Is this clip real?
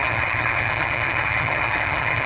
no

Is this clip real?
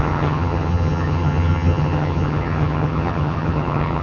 no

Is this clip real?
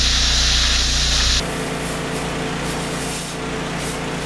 yes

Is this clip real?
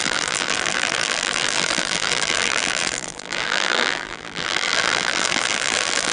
no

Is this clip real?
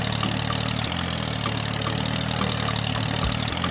yes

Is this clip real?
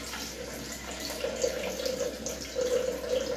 yes